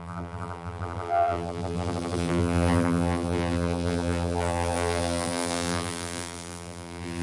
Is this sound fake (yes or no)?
yes